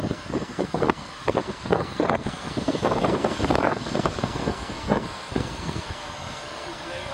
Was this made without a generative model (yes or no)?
no